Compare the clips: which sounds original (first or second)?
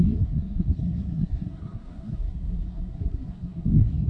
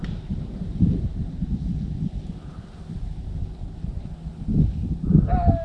second